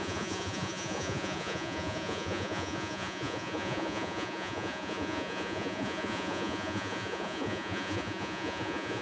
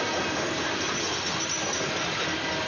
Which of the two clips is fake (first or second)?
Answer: first